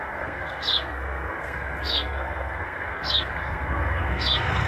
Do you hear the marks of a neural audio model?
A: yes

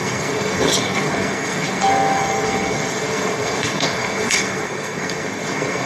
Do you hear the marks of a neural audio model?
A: yes